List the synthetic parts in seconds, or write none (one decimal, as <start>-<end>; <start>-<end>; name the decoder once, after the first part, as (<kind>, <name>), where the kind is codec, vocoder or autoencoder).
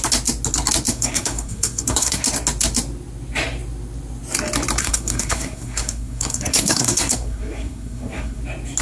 0.9-2.2 (codec, SNAC); 4.8-8.4